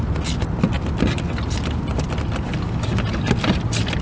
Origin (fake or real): real